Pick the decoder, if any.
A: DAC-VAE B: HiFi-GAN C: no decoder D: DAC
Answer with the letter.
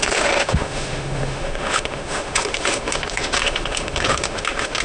A